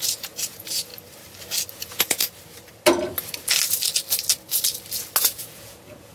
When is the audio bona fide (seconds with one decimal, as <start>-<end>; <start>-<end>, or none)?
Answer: 0.9-1.7; 2.2-5.2